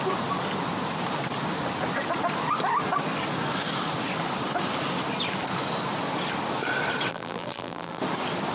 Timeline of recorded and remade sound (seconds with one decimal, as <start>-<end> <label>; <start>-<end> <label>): 0.0-7.1 recorded; 7.1-8.0 remade; 8.0-8.5 recorded